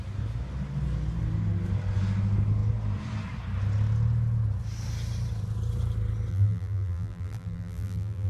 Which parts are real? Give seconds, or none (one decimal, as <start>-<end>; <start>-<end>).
0.0-6.3